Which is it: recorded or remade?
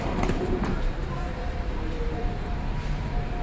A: remade